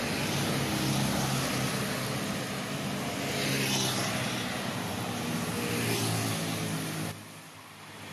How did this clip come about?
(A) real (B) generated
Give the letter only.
A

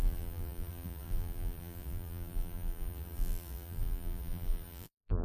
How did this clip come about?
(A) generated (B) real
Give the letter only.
A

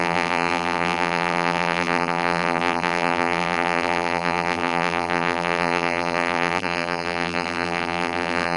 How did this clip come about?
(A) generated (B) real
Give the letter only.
A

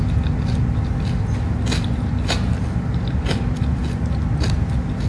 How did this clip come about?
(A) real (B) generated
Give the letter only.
A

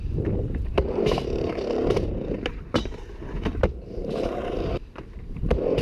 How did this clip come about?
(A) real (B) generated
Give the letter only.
B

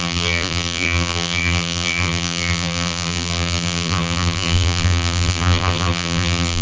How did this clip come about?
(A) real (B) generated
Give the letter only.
B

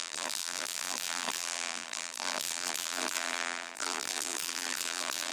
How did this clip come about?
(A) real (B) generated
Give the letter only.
B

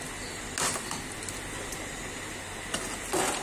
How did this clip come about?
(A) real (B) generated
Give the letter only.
A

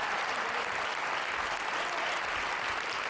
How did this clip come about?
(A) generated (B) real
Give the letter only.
B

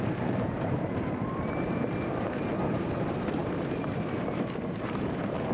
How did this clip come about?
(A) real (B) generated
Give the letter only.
B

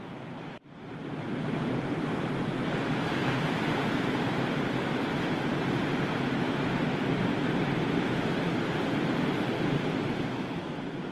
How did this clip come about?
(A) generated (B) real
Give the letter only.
B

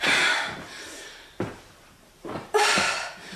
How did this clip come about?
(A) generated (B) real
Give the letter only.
A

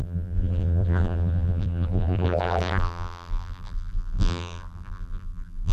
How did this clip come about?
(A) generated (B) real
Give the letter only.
A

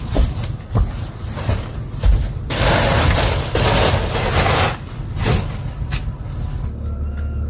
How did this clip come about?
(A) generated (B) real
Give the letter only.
B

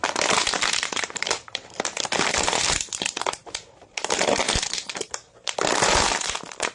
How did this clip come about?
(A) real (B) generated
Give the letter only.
B